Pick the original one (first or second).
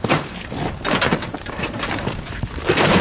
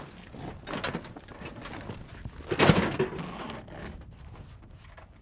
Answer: second